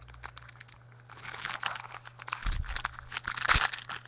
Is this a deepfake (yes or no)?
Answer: no